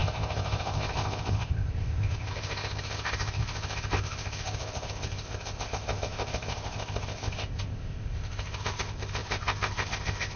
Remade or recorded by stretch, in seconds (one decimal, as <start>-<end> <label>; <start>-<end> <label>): 0.0-10.4 remade